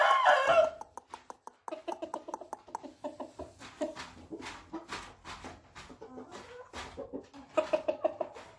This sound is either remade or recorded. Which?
recorded